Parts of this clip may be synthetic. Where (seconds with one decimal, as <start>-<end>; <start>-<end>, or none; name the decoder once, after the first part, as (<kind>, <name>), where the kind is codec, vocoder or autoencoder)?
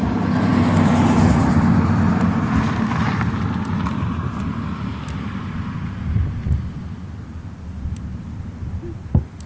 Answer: none